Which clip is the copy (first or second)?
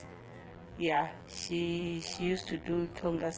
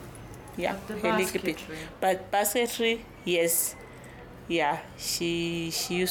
first